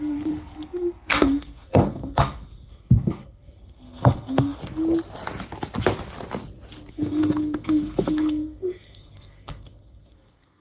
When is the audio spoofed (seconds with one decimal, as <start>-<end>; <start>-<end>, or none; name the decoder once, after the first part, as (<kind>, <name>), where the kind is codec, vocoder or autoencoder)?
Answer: 0.0-4.6 (codec, SNAC); 6.9-10.6